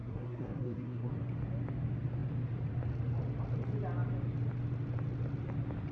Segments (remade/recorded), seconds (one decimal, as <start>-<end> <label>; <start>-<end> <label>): 0.0-1.1 remade; 1.1-5.9 recorded